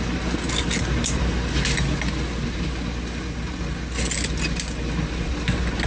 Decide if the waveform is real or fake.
real